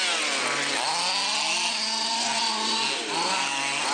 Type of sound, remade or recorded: recorded